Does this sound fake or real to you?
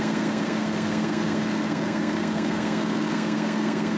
fake